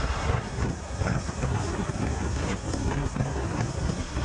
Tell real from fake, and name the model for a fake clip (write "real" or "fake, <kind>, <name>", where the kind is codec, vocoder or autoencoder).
fake, codec, SNAC